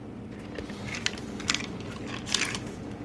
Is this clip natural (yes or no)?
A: yes